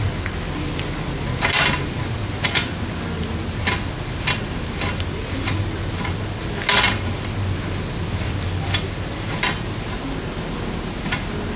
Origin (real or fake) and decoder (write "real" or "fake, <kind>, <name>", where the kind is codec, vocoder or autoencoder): real